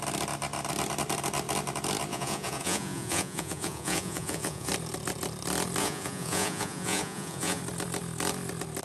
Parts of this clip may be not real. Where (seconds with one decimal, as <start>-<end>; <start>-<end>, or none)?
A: 2.1-4.7; 5.8-7.6